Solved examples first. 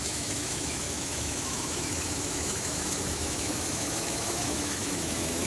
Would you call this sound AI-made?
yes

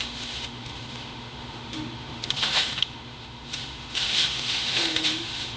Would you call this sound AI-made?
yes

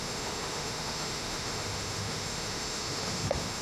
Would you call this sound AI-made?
yes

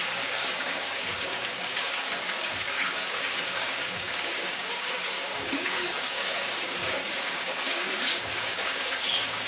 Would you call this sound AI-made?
yes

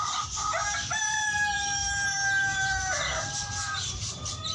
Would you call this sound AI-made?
yes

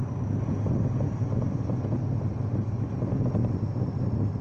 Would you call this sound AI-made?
no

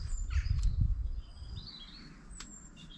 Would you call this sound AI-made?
no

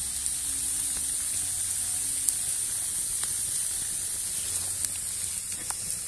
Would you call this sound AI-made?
no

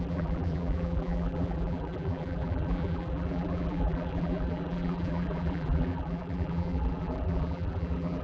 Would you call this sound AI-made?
yes